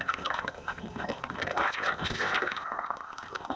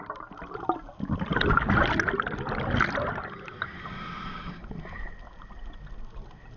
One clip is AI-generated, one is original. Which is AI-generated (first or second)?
first